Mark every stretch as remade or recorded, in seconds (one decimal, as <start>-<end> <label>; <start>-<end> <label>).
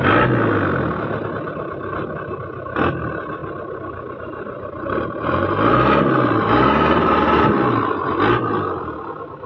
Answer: 0.0-9.5 recorded